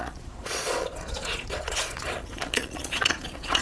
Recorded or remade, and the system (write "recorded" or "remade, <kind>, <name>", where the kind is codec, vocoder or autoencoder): remade, vocoder, Vocos